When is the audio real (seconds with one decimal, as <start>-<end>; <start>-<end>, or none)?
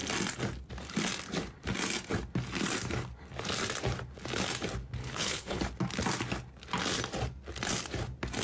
0.0-5.0; 5.6-8.4